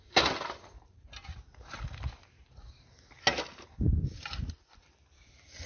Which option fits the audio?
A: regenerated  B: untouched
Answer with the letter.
B